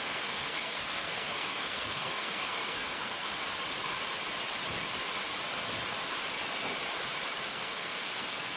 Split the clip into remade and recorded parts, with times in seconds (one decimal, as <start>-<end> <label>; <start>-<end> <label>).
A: 0.0-3.4 remade; 3.4-7.5 recorded; 7.5-8.6 remade